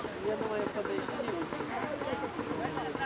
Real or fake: real